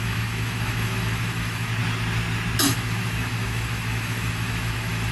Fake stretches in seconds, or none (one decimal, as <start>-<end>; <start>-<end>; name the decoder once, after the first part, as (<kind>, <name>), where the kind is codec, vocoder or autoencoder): 0.0-1.7 (autoencoder, DAC-VAE); 2.6-5.1